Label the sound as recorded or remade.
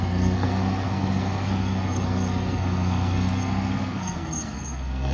remade